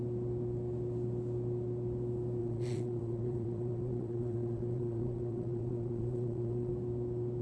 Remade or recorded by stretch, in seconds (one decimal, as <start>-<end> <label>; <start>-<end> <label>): 0.0-2.4 recorded; 2.4-6.7 remade; 6.7-7.4 recorded